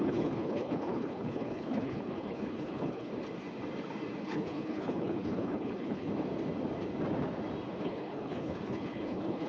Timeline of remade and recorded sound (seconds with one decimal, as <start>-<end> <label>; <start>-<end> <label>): 0.0-3.1 remade; 3.1-4.2 recorded; 4.2-6.1 remade; 6.1-7.8 recorded; 7.8-9.5 remade